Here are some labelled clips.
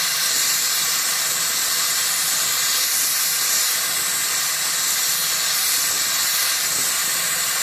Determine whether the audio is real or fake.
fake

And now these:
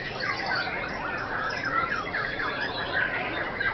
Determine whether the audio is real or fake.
fake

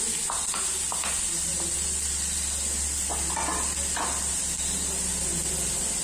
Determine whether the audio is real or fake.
real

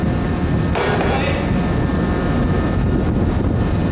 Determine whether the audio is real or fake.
real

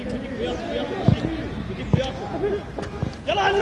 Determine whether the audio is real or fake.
real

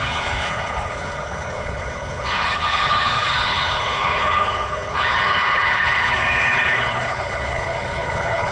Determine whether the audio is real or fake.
fake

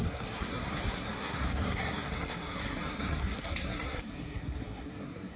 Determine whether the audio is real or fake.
fake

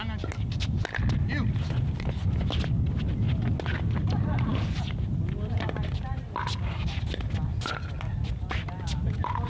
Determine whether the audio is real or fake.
real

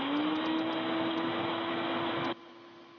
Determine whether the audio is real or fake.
real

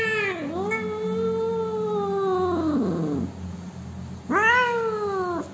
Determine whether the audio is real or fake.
real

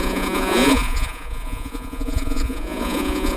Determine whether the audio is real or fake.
fake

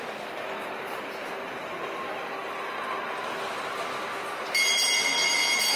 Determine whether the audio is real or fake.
real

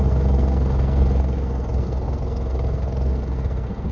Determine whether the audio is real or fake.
fake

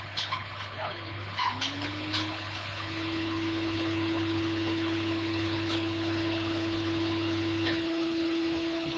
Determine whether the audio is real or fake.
fake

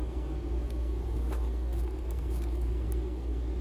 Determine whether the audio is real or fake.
fake